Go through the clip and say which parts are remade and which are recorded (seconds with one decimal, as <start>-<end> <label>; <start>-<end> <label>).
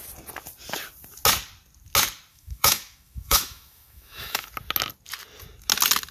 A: 0.0-2.3 recorded; 2.3-4.5 remade; 4.5-6.1 recorded